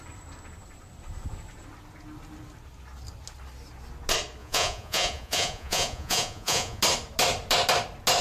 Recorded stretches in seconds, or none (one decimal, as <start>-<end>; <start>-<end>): 0.0-4.4; 6.8-8.2